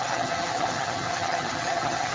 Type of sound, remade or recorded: remade